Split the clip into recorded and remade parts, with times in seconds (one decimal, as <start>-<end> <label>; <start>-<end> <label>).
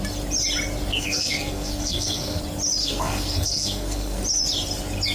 0.0-0.9 recorded; 0.9-2.4 remade; 2.4-2.8 recorded; 2.8-4.2 remade; 4.2-5.1 recorded